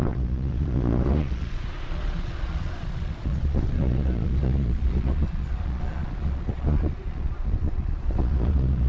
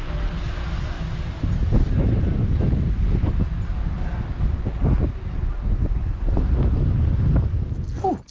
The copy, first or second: first